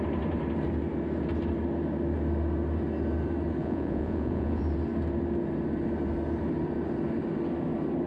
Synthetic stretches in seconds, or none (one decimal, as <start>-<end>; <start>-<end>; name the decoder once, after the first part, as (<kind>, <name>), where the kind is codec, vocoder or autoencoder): 3.6-4.6 (vocoder, Vocos)